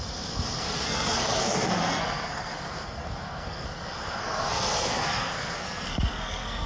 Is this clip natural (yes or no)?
no